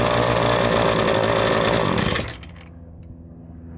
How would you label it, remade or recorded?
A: recorded